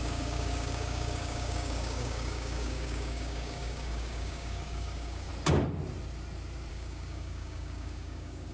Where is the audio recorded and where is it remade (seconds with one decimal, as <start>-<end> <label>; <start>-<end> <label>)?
0.0-5.3 remade; 5.3-6.7 recorded; 6.7-8.5 remade